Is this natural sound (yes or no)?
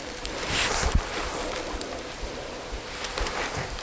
yes